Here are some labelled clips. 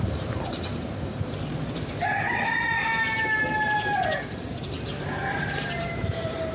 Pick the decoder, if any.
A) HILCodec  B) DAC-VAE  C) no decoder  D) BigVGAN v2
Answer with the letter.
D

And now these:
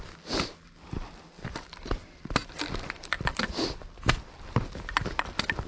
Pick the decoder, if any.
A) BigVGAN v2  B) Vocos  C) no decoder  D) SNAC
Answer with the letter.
C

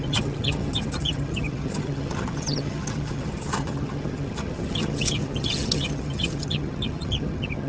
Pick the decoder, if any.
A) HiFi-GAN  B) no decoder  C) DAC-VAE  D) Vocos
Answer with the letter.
A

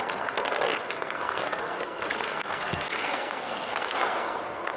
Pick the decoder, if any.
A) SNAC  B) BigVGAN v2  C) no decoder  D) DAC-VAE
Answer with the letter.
A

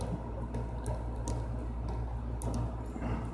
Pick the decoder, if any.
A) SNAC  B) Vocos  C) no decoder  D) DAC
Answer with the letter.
C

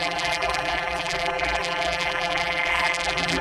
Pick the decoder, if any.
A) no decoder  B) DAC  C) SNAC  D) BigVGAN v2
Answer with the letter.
D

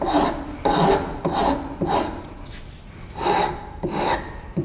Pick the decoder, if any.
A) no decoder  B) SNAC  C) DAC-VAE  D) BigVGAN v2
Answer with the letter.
A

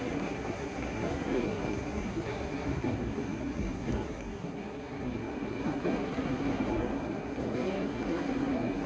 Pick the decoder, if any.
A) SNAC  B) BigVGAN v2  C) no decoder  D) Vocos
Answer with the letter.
A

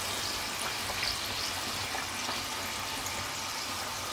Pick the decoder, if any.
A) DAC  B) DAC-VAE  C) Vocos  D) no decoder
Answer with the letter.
D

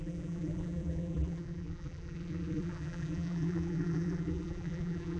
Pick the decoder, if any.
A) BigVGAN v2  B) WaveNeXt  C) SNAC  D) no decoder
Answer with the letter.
A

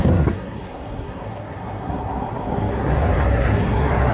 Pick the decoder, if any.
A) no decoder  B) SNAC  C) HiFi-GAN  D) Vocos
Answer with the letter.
B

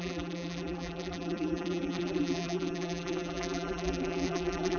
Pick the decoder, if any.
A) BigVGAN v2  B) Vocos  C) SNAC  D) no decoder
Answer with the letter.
A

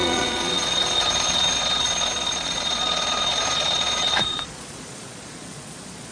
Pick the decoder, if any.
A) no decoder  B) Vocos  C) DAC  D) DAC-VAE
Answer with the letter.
B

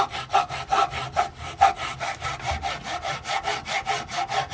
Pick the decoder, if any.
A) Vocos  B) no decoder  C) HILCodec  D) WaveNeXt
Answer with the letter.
B